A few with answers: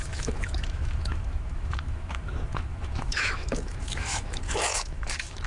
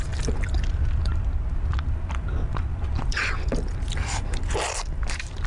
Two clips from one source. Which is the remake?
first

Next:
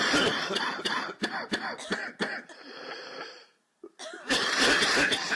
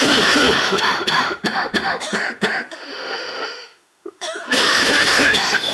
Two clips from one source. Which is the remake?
second